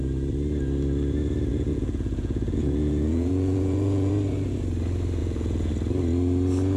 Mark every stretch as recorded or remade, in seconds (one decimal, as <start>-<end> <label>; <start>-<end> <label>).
0.0-1.5 recorded; 1.5-4.1 remade; 4.1-5.2 recorded; 5.2-5.7 remade; 5.7-6.8 recorded